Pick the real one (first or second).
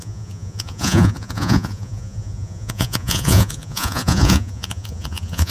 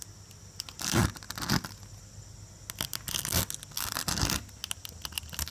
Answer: second